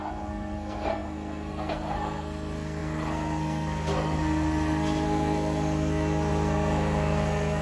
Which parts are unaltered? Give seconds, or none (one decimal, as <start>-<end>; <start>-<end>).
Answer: none